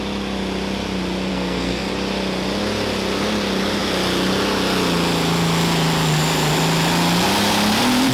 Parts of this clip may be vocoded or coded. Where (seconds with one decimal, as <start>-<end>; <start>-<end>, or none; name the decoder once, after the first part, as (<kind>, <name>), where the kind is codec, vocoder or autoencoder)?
1.3-1.9 (codec, SNAC)